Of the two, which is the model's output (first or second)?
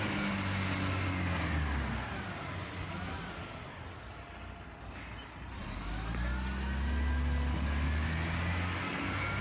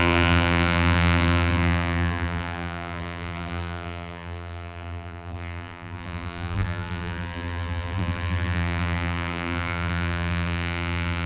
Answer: second